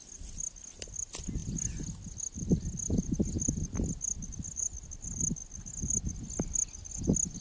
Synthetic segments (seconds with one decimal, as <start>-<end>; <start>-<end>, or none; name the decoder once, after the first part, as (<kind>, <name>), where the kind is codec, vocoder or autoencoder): none